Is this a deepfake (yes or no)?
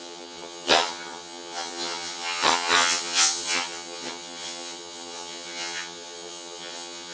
yes